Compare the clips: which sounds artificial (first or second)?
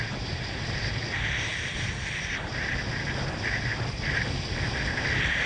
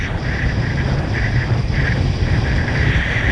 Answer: second